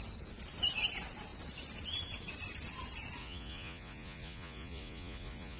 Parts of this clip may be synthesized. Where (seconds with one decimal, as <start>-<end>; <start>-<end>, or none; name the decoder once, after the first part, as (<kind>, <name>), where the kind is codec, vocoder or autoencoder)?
3.2-5.6 (vocoder, Vocos)